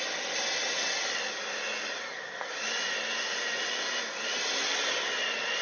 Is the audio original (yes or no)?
yes